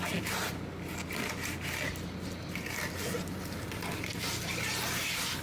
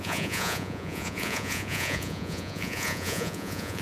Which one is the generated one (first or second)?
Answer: second